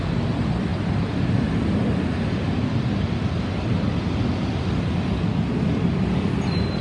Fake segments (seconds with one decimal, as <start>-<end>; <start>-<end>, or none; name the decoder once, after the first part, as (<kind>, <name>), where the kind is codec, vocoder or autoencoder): none